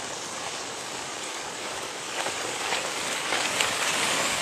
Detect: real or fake fake